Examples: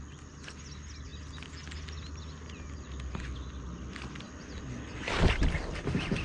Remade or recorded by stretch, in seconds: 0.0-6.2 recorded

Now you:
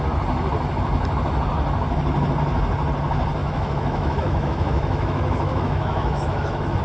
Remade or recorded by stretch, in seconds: 0.0-3.4 recorded; 3.4-6.8 remade

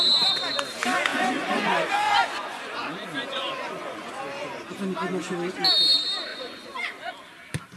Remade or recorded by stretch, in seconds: 0.0-1.1 recorded; 1.1-4.2 remade; 4.2-6.3 recorded; 6.3-7.1 remade; 7.1-7.8 recorded

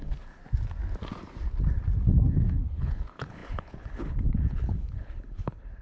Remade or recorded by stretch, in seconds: 0.0-0.4 remade; 0.4-2.3 recorded; 2.3-5.8 remade

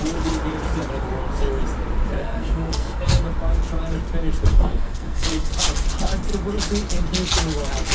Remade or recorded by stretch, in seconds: 0.0-2.2 recorded; 2.2-3.2 remade; 3.2-4.5 recorded; 4.5-5.5 remade; 5.5-7.9 recorded

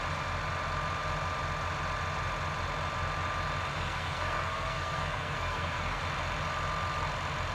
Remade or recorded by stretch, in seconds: 0.0-3.7 recorded; 3.7-6.0 remade; 6.0-7.5 recorded